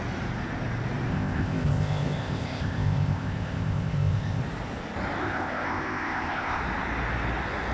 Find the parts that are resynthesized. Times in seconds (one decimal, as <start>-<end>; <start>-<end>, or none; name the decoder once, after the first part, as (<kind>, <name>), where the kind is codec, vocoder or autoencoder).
1.1-4.4 (codec, ZipCodec); 5.2-6.6